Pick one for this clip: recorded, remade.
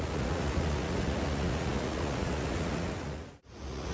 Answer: remade